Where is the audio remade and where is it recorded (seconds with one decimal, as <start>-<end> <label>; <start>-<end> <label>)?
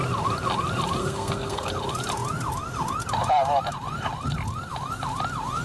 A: 0.0-1.0 recorded; 1.0-1.7 remade; 1.7-5.6 recorded